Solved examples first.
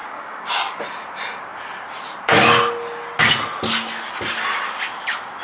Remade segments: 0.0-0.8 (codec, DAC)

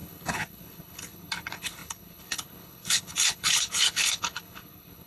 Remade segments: 0.0-5.1 (codec, HILCodec)

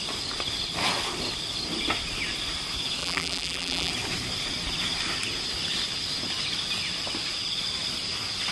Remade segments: 3.0-3.9 (vocoder, BigVGAN v2)

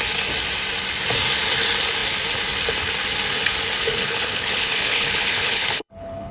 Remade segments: 3.8-6.3 (codec, HILCodec)

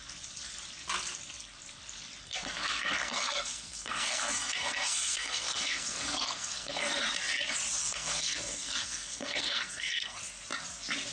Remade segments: 2.2-7.0 (codec, SNAC); 7.8-10.2

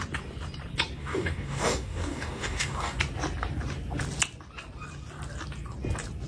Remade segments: 1.0-3.0 (codec, DAC)

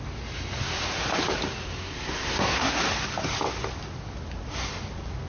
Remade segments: 1.8-2.8 (codec, SNAC)

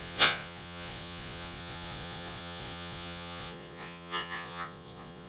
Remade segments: 0.0-5.3 (vocoder, Vocos)